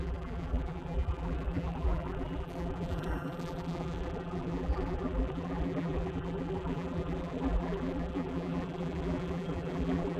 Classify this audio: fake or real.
fake